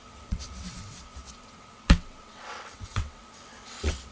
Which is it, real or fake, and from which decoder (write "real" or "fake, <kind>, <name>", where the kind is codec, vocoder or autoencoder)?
fake, vocoder, WaveNeXt